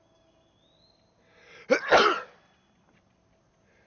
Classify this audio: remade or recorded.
recorded